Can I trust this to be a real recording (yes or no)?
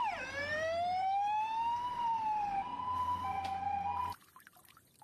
no